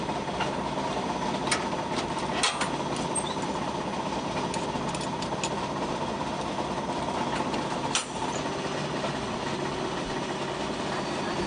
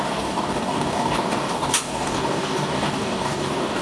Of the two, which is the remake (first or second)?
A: second